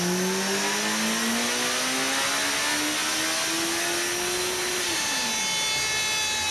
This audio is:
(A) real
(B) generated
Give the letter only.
A